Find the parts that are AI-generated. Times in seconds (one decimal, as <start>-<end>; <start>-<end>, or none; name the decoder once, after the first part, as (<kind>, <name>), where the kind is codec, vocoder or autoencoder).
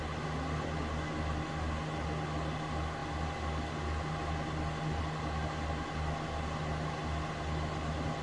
none